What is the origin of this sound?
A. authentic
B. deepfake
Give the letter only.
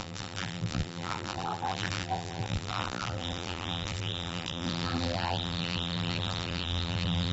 B